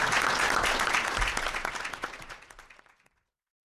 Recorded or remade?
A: remade